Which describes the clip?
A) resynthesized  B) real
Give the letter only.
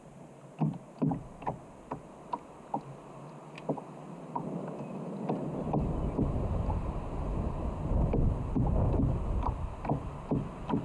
B